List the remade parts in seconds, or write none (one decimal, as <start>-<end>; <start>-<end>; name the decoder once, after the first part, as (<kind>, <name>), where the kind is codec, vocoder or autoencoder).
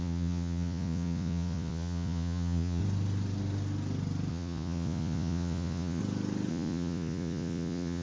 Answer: 0.0-2.8 (vocoder, Vocos); 4.3-6.0; 6.5-8.0